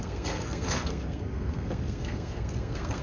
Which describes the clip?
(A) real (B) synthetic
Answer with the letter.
B